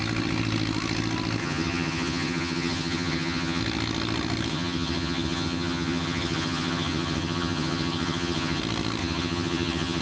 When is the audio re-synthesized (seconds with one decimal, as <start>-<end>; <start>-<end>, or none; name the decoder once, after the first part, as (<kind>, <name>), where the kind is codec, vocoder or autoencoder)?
1.4-3.6 (vocoder, HiFi-GAN); 4.5-8.6; 9.0-10.0

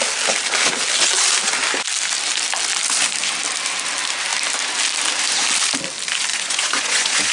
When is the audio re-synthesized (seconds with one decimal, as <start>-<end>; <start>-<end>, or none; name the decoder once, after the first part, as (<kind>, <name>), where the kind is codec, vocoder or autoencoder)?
6.3-7.3 (vocoder, Vocos)

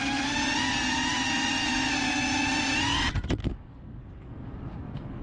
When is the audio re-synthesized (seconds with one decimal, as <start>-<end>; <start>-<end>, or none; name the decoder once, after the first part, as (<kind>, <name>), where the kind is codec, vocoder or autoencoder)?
3.4-5.2 (codec, SNAC)

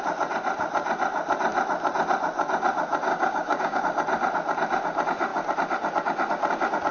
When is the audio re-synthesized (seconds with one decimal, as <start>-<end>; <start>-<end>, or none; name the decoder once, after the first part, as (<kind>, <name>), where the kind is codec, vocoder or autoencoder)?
3.1-3.8 (codec, DAC)

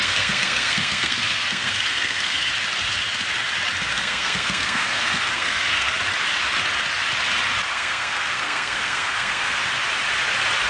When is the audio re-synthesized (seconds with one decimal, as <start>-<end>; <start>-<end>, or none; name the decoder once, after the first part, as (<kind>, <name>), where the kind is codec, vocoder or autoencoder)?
0.0-2.5 (codec, SNAC); 3.9-6.0; 7.7-9.6

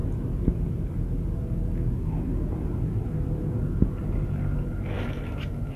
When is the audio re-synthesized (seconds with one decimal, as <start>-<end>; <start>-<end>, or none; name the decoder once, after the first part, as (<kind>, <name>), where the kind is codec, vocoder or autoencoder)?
none